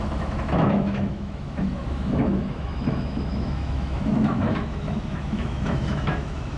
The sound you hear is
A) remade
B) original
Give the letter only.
A